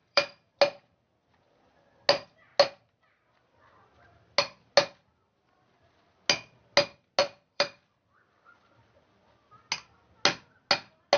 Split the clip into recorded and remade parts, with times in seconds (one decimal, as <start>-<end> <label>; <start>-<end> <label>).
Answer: 0.0-0.6 remade; 0.6-7.2 recorded; 7.2-8.1 remade; 8.1-11.2 recorded